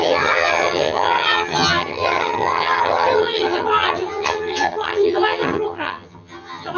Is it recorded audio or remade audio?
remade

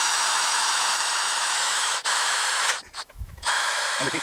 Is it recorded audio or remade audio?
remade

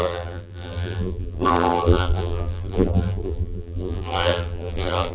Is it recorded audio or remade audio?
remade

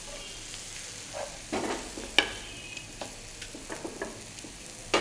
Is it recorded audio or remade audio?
recorded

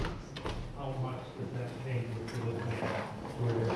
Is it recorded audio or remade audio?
recorded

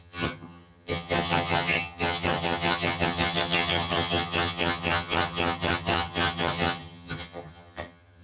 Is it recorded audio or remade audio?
remade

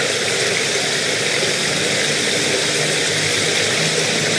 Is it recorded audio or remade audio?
recorded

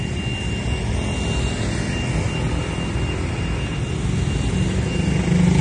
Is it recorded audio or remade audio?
recorded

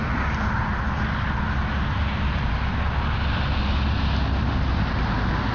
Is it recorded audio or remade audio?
recorded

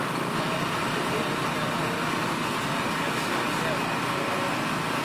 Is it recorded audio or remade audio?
recorded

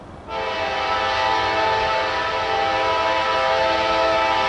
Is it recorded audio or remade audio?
recorded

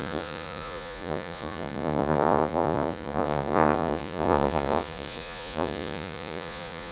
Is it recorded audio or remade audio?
remade